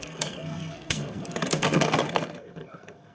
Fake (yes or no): yes